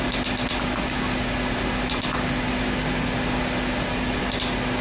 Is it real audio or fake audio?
real